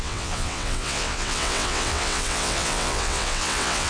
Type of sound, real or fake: fake